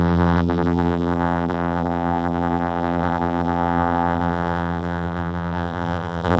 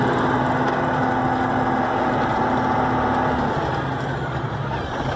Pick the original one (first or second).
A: second